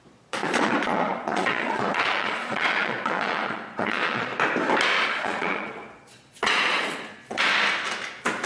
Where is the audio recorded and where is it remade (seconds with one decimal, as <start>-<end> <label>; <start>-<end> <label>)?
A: 0.0-4.3 remade; 4.3-5.0 recorded; 5.0-7.5 remade; 7.5-8.5 recorded